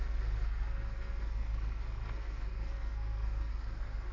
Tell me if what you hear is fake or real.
fake